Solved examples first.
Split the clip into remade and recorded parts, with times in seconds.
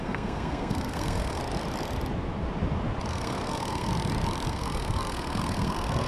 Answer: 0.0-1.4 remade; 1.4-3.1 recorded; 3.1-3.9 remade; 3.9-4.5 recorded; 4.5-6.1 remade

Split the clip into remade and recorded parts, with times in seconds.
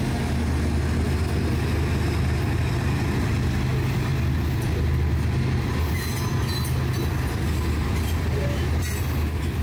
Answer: 0.0-9.6 recorded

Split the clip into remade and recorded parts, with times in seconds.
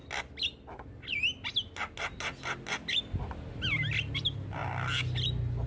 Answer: 0.0-5.7 recorded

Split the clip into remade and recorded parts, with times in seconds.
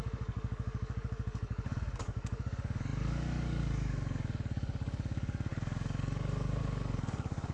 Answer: 0.0-7.5 remade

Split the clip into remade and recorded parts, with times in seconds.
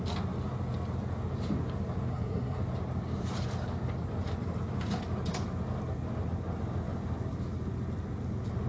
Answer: 0.0-2.1 recorded; 2.1-2.6 remade; 2.6-8.7 recorded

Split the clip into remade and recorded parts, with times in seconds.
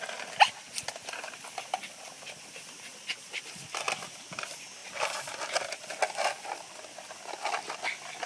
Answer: 0.0-8.3 recorded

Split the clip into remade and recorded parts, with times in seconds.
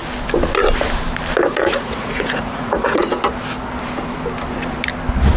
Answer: 0.0-1.5 recorded; 1.5-3.1 remade; 3.1-5.4 recorded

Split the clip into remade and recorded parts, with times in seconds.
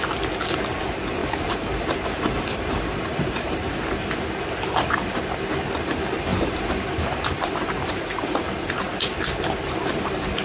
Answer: 0.0-1.2 recorded; 1.2-4.1 remade; 4.1-6.3 recorded; 6.3-8.7 remade; 8.7-10.4 recorded